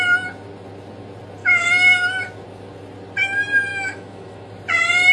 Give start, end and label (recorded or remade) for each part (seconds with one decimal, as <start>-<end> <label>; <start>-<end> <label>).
0.0-1.4 recorded; 1.4-2.2 remade; 2.2-3.7 recorded; 3.7-4.5 remade; 4.5-5.1 recorded